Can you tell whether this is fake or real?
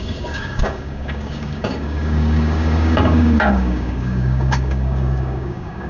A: fake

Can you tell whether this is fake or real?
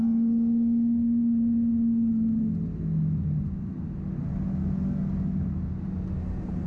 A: real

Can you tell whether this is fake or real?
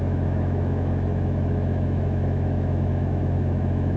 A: fake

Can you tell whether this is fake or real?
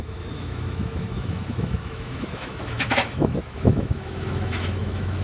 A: fake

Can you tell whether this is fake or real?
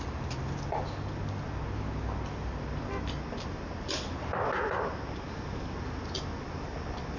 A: real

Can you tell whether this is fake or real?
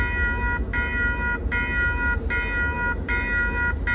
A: real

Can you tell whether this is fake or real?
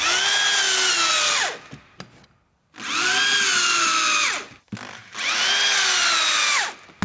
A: real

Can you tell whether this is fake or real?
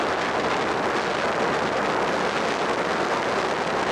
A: real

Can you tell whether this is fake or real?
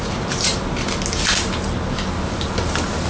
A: real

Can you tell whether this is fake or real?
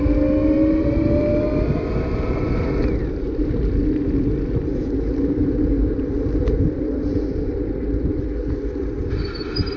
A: real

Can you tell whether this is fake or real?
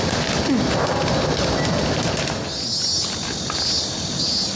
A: real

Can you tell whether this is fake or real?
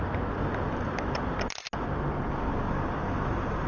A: real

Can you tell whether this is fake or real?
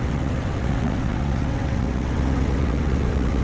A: fake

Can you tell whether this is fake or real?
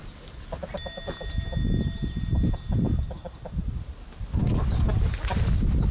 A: real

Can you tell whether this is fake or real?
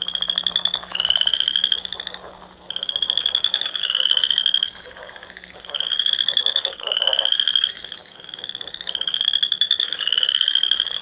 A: fake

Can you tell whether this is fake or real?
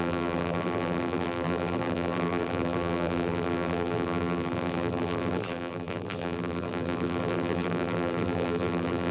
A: fake